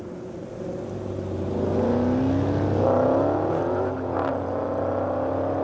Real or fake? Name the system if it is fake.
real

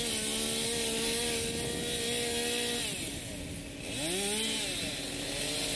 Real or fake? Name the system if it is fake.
real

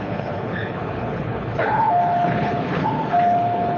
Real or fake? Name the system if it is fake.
fake, codec, HILCodec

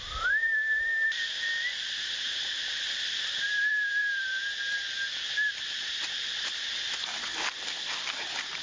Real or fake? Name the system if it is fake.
fake, vocoder, BigVGAN v2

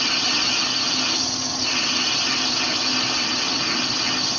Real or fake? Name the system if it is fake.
real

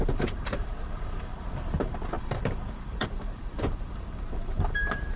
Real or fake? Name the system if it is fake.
fake, vocoder, BigVGAN v2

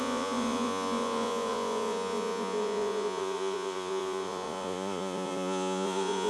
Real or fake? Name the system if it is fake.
fake, vocoder, Vocos